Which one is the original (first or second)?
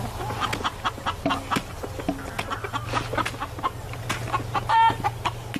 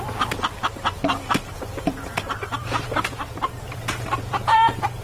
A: first